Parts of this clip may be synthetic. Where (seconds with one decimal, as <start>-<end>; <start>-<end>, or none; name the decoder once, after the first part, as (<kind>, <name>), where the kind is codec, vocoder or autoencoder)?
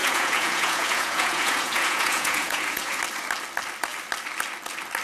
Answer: 0.0-3.0 (vocoder, Vocos)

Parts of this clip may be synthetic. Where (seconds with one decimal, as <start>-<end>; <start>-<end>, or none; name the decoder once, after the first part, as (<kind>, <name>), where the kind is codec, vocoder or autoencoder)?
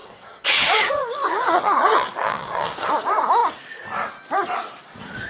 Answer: 0.0-2.9 (vocoder, WaveNeXt)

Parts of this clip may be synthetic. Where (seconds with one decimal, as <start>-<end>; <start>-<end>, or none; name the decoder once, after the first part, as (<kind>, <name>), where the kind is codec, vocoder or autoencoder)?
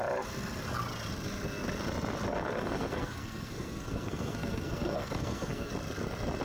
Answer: 2.3-5.7 (codec, SNAC)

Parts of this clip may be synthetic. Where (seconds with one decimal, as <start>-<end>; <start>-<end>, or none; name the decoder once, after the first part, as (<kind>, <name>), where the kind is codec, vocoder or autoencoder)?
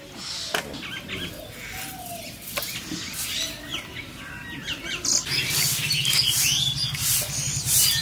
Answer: none